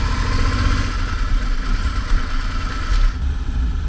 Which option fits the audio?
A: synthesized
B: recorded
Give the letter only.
B